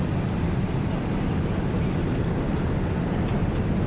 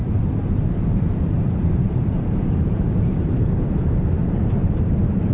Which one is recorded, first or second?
first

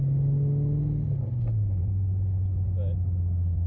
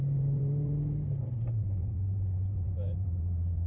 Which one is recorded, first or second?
first